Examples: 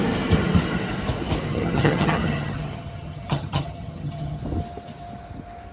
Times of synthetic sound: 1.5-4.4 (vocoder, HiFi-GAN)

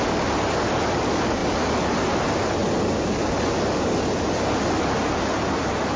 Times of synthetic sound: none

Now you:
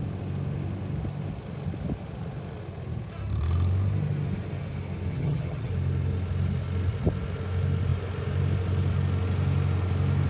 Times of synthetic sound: 5.1-5.7 (vocoder, HiFi-GAN)

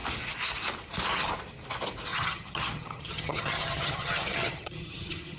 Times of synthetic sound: 2.1-5.4 (vocoder, HiFi-GAN)

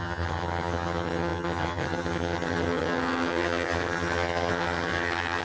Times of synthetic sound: 0.0-5.4 (vocoder, HiFi-GAN)

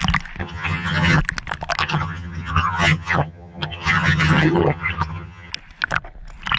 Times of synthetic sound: 0.4-1.2 (vocoder, HiFi-GAN); 1.8-5.5

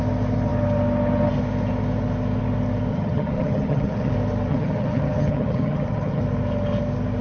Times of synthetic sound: 2.9-4.1 (vocoder, HiFi-GAN); 4.5-6.2